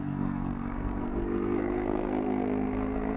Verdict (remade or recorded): remade